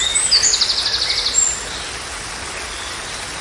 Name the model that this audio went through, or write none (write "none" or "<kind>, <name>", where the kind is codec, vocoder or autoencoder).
none